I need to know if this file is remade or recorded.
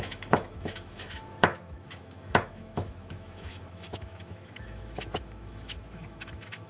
remade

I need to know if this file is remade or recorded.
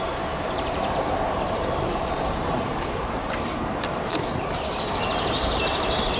remade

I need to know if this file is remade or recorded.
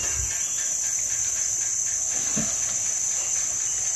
recorded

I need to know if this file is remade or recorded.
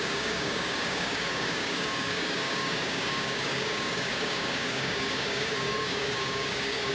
remade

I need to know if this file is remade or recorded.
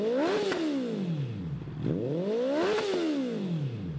recorded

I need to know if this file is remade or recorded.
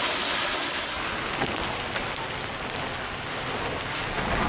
recorded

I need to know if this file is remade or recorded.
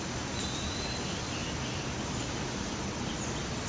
recorded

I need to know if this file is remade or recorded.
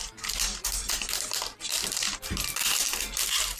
recorded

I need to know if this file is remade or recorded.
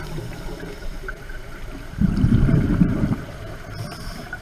remade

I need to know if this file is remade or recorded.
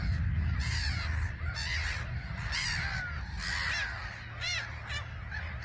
recorded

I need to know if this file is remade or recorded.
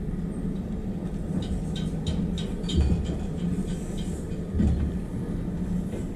recorded